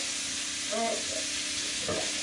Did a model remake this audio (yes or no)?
no